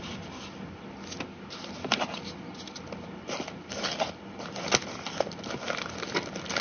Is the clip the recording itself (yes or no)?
yes